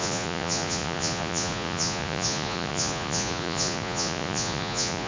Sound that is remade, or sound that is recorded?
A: remade